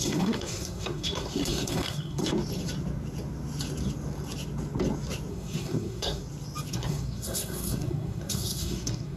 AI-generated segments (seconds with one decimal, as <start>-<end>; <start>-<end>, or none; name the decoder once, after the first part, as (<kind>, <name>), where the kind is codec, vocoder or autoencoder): 0.0-2.2 (codec, SNAC); 5.3-6.2; 6.7-9.2